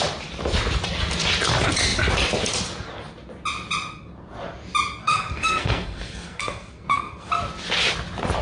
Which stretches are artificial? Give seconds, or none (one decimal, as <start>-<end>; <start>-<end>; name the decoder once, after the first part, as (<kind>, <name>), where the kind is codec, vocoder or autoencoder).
5.0-7.3 (codec, SNAC)